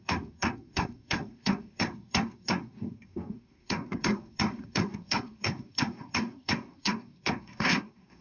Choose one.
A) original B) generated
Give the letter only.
B